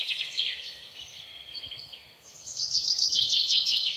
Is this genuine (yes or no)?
no